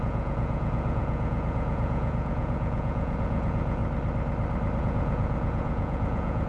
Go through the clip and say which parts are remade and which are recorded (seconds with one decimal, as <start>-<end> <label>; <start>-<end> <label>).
0.0-3.8 remade; 3.8-4.8 recorded; 4.8-6.5 remade